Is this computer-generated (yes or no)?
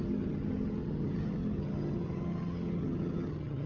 yes